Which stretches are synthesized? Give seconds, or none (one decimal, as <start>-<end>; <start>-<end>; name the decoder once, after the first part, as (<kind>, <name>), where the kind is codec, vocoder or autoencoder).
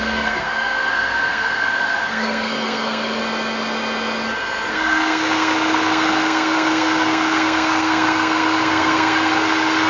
0.0-3.2 (codec, SNAC); 4.7-9.9